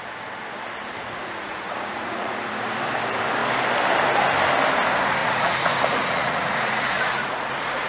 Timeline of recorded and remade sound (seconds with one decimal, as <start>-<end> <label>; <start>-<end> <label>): 0.0-1.2 recorded; 1.2-2.3 remade; 2.3-5.2 recorded; 5.2-7.9 remade